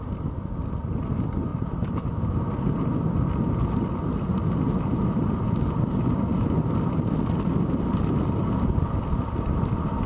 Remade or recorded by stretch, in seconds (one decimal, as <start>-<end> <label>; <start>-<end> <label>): 0.0-1.5 recorded; 1.5-2.2 remade; 2.2-10.1 recorded